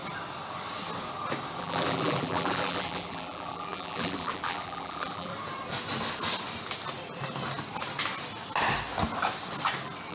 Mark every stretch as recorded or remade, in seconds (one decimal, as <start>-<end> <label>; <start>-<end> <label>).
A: 0.0-1.6 recorded; 1.6-5.3 remade; 5.3-10.1 recorded